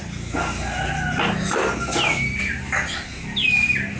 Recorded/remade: recorded